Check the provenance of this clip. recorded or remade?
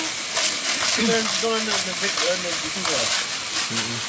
recorded